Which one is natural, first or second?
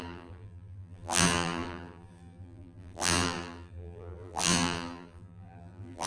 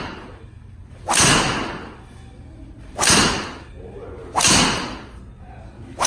second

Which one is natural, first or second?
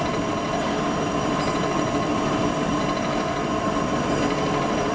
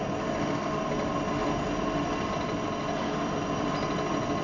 second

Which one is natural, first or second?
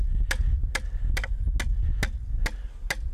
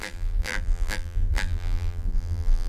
first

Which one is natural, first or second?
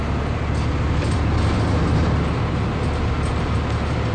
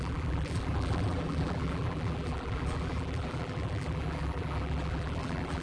first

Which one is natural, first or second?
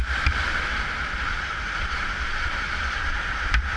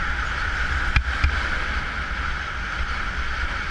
second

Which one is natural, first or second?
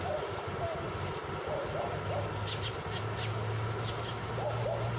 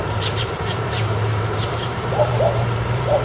first